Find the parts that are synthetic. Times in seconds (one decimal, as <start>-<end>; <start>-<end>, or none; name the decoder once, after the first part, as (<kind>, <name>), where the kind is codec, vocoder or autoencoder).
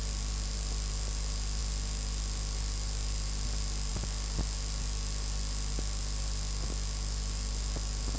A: none